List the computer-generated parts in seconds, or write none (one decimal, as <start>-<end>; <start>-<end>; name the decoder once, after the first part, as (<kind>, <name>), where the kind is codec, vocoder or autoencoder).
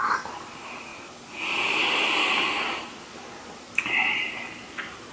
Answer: none